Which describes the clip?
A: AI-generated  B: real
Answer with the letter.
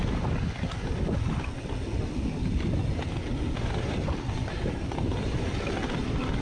B